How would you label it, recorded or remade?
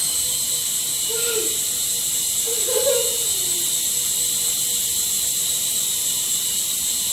remade